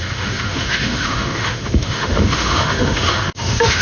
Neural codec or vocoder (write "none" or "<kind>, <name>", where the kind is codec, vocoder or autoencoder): autoencoder, DAC-VAE